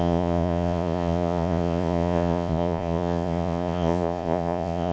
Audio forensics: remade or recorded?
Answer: remade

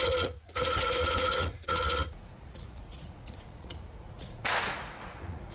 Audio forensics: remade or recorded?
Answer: remade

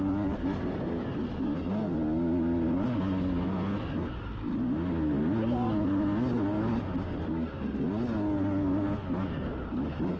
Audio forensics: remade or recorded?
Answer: recorded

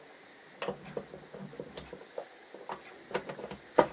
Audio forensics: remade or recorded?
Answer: recorded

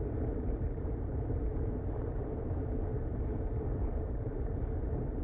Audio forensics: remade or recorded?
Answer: remade